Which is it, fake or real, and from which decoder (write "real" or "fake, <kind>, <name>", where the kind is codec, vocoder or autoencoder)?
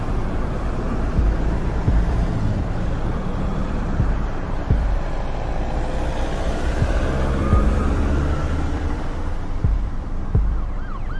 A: fake, vocoder, BigVGAN v2